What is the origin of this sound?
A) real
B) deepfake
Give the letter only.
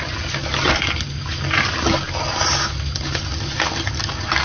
A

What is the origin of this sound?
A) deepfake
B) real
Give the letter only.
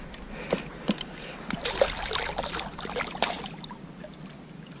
B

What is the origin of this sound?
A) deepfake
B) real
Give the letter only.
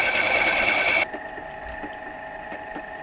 B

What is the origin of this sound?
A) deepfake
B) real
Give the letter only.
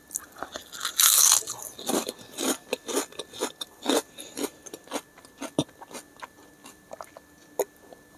B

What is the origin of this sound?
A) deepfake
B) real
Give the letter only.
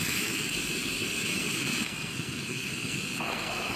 A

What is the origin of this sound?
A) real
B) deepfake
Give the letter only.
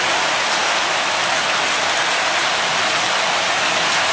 A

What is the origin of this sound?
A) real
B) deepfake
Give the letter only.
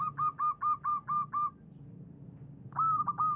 A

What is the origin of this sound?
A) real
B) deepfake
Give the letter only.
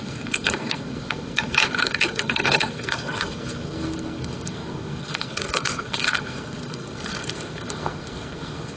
B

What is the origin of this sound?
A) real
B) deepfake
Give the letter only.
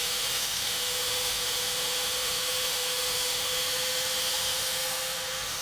B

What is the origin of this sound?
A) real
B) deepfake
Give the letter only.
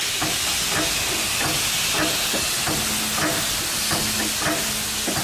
A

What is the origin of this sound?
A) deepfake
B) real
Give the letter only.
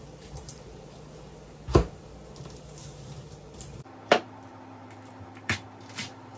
A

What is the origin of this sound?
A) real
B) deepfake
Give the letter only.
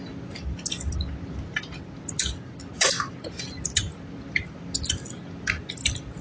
A